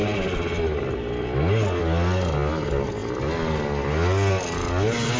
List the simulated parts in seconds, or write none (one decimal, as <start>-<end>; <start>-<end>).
none